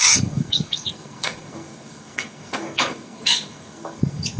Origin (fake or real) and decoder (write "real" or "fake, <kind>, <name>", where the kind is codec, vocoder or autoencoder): fake, codec, SNAC